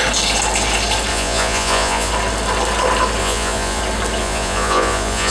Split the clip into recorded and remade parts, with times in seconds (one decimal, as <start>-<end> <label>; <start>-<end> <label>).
0.0-1.1 recorded; 1.1-2.1 remade; 2.1-3.2 recorded; 3.2-3.8 remade; 3.8-4.2 recorded; 4.2-5.3 remade